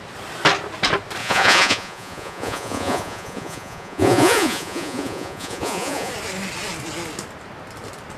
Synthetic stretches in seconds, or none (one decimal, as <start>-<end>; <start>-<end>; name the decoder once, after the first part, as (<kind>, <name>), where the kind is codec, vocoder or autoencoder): 1.2-6.1 (vocoder, Vocos)